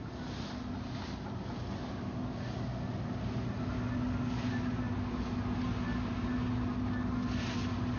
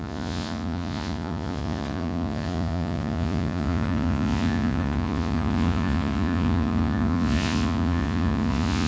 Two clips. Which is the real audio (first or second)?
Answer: first